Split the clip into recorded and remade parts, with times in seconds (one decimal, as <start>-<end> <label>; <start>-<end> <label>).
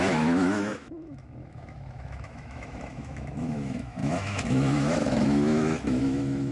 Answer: 0.0-6.5 remade